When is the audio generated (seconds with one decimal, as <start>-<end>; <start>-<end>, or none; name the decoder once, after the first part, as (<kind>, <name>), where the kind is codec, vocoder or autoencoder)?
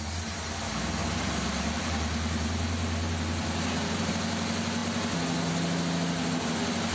1.0-4.1 (vocoder, BigVGAN v2)